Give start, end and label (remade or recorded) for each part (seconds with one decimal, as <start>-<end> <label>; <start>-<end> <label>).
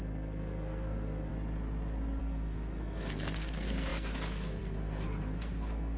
0.0-1.3 remade; 1.3-2.2 recorded; 2.2-6.0 remade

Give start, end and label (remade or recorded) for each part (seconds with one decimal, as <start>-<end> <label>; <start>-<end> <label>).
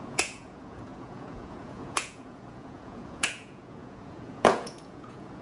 0.0-5.4 remade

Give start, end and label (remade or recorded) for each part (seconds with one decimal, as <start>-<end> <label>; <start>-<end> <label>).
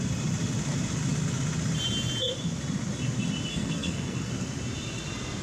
0.0-3.5 recorded; 3.5-4.3 remade; 4.3-5.4 recorded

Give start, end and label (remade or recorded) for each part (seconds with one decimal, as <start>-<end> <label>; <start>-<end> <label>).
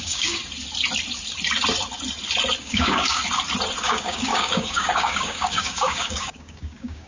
0.0-0.4 remade; 0.4-2.6 recorded; 2.6-3.2 remade; 3.2-3.8 recorded; 3.8-7.1 remade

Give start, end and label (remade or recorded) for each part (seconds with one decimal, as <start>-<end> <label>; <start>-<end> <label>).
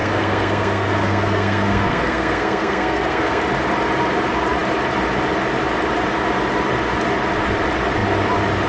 0.0-3.4 remade; 3.4-8.7 recorded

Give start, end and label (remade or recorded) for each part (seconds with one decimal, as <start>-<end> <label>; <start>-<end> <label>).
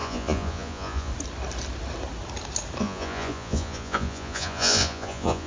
0.0-1.1 remade; 1.1-2.8 recorded; 2.8-5.5 remade